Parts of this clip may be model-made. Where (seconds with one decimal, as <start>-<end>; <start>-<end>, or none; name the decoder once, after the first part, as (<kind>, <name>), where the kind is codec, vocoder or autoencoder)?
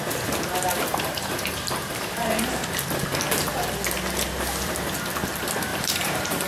0.9-2.7 (vocoder, BigVGAN v2); 5.7-6.5